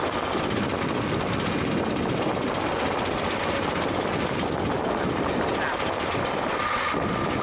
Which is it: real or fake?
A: real